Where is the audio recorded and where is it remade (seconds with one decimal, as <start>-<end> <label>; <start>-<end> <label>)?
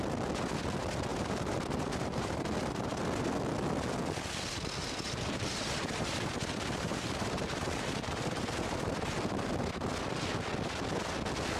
0.0-1.1 recorded; 1.1-3.0 remade; 3.0-4.8 recorded; 4.8-9.3 remade; 9.3-11.6 recorded